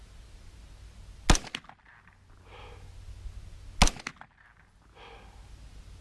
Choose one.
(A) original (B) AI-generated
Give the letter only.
A